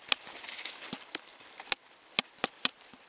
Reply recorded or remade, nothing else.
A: recorded